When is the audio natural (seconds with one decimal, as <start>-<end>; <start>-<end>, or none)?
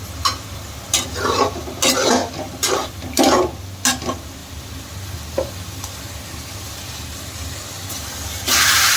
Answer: 0.0-9.0